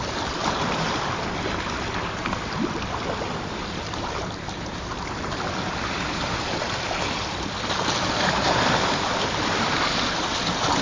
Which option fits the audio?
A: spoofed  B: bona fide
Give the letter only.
A